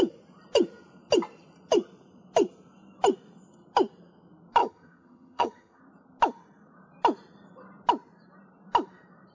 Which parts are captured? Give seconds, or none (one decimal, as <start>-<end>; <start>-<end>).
0.0-4.6; 5.8-9.3